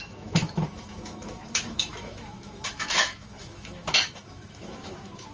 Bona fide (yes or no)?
no